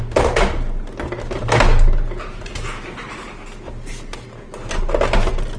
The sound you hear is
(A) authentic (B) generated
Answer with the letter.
A